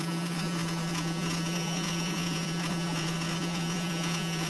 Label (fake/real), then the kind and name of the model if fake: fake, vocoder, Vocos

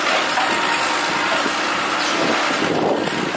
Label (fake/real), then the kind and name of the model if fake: real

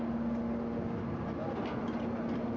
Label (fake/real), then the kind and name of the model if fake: real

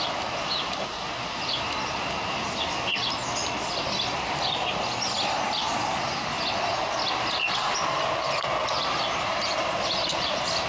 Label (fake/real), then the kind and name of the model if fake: real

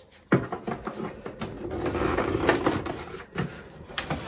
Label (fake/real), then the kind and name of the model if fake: real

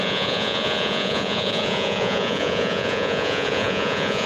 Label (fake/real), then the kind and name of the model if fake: fake, vocoder, Vocos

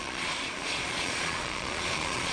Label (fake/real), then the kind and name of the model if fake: fake, vocoder, Vocos